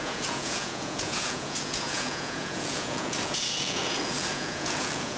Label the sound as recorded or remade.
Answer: remade